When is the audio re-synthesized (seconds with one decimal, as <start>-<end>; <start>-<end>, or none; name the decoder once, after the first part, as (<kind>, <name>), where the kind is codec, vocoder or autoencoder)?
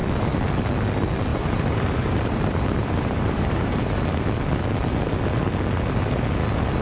1.3-4.0 (vocoder, BigVGAN v2)